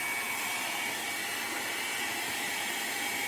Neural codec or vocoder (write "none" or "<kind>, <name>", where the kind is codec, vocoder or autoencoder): none